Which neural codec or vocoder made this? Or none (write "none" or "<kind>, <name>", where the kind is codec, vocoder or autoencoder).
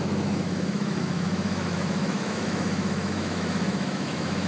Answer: autoencoder, DAC-VAE